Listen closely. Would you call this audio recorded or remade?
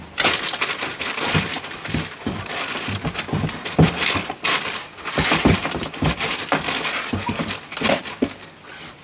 recorded